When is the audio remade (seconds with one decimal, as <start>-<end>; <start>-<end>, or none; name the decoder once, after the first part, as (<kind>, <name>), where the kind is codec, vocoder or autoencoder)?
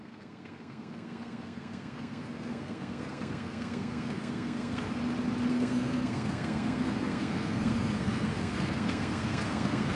0.0-5.0 (codec, SNAC); 5.5-10.0